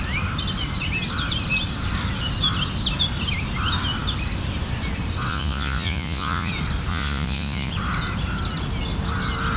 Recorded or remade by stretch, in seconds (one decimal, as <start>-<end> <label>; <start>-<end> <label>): 0.0-5.3 recorded; 5.3-6.5 remade; 6.5-6.9 recorded; 6.9-7.7 remade; 7.7-9.6 recorded